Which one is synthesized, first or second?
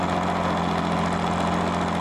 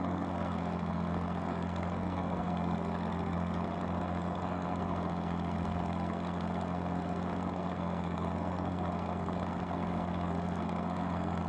second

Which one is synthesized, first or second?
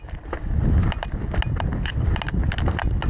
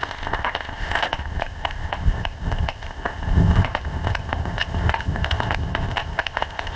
second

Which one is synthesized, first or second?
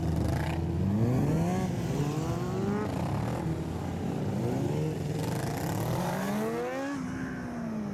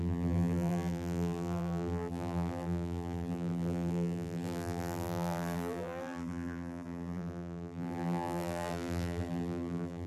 second